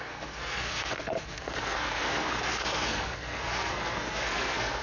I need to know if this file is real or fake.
fake